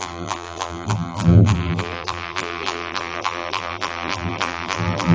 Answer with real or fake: fake